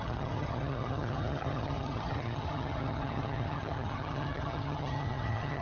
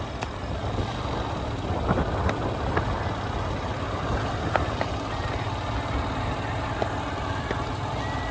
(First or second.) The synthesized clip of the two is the first